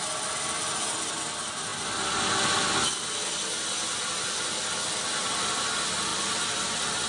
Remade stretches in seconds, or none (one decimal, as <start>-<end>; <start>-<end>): none